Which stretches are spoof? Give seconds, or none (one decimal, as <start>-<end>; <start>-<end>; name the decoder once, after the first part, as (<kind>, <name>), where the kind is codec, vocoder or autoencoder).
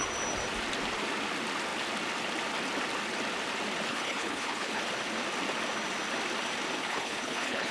3.9-4.8 (codec, HILCodec); 6.8-7.7